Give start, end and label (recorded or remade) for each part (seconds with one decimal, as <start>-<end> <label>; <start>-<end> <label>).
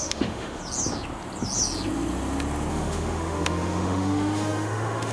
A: 0.0-0.6 remade; 0.6-2.7 recorded; 2.7-5.1 remade